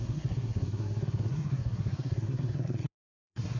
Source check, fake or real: fake